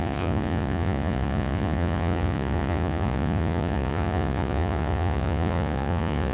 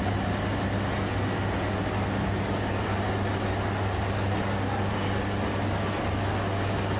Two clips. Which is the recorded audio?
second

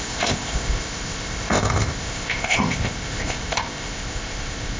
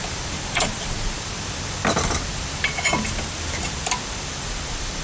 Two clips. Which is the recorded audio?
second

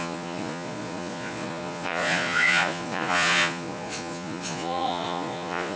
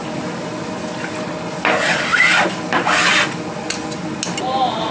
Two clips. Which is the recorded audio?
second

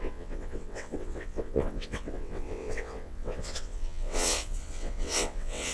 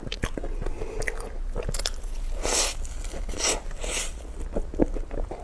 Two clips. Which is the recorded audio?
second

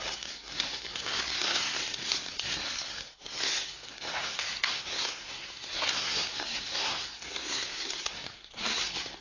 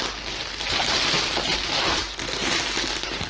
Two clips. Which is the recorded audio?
second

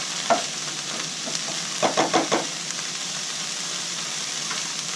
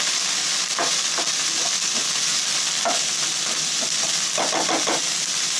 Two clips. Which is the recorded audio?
second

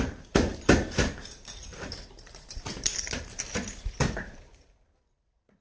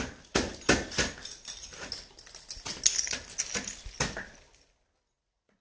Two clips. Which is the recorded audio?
second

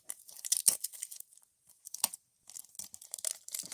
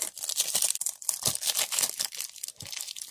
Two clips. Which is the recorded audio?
second